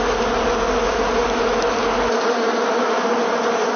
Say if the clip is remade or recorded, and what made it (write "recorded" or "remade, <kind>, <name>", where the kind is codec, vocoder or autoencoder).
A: recorded